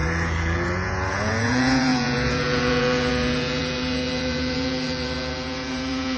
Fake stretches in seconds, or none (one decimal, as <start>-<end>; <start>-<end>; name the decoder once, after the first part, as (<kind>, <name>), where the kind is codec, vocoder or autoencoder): 0.0-6.2 (vocoder, Vocos)